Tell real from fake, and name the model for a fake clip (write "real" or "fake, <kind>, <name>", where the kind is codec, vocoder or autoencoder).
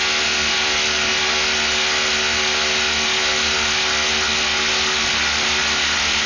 real